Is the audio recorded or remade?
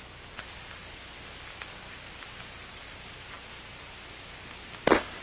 recorded